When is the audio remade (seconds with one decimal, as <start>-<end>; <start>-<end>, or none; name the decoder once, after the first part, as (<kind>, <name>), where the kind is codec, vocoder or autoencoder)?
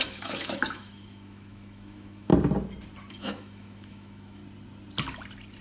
0.0-2.3 (autoencoder, DAC-VAE); 3.1-4.4